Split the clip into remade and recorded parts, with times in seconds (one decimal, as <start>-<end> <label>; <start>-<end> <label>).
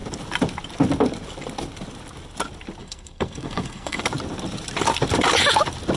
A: 0.0-2.8 recorded; 2.8-4.0 remade; 4.0-6.0 recorded